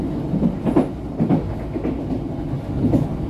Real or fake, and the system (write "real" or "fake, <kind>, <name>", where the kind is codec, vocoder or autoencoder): real